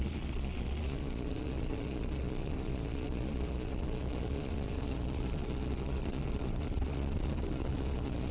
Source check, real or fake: fake